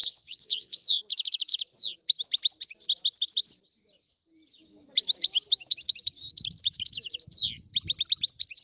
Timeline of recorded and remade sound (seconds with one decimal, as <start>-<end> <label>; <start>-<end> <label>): 0.0-1.0 remade; 1.0-8.6 recorded